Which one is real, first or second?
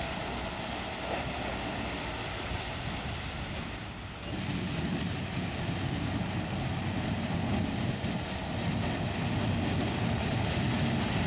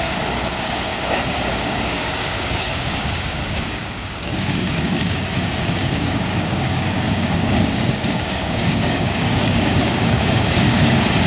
first